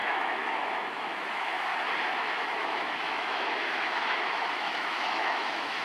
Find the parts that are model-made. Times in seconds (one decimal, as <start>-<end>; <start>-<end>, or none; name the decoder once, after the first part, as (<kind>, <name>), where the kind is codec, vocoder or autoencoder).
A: 0.0-1.7 (autoencoder, DAC-VAE); 2.2-5.8

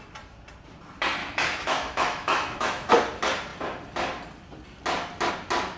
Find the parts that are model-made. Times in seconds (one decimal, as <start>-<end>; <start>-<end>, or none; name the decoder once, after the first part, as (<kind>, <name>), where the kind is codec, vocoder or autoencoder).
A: 1.2-2.9 (autoencoder, DAC-VAE)

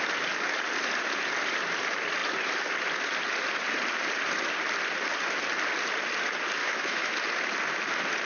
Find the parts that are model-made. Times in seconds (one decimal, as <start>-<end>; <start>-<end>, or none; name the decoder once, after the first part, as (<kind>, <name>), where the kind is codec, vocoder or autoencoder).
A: 6.6-7.1 (autoencoder, DAC-VAE)

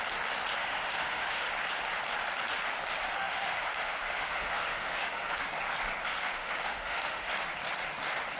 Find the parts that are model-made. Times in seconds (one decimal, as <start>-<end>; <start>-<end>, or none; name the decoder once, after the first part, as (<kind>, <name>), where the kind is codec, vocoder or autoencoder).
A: 0.6-1.5 (autoencoder, DAC-VAE); 3.1-5.4; 6.1-7.3

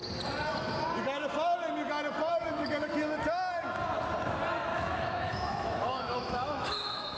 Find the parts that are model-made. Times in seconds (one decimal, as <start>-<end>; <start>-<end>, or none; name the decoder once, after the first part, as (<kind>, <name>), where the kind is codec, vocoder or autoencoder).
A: 2.3-2.9 (autoencoder, DAC-VAE); 4.7-7.2

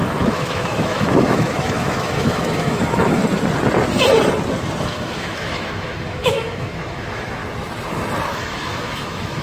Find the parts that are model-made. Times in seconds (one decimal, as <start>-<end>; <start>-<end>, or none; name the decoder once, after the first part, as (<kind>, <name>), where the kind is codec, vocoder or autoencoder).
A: 0.0-3.2 (autoencoder, DAC-VAE); 4.8-7.4; 8.3-9.4

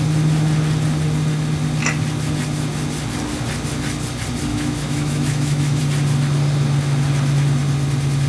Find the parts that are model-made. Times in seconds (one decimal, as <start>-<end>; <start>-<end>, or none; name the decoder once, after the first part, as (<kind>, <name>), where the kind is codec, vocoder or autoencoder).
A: 4.5-5.8 (autoencoder, DAC-VAE)